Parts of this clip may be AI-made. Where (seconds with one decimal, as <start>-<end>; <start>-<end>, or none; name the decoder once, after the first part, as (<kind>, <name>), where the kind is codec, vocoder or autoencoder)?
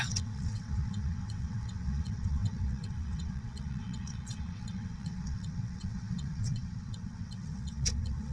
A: 0.0-8.3 (vocoder, WaveNeXt)